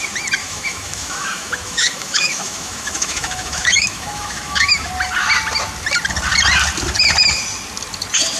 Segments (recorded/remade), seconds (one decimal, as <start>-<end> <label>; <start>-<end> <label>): 0.0-0.4 recorded; 0.4-4.9 remade; 4.9-8.4 recorded